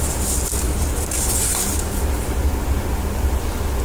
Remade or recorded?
recorded